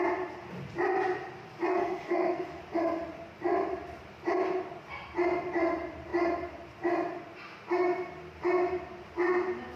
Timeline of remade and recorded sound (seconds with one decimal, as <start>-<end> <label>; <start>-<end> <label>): 0.0-1.7 recorded; 1.7-2.6 remade; 2.6-9.8 recorded